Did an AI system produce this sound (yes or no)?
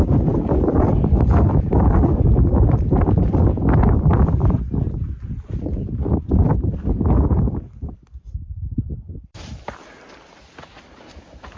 yes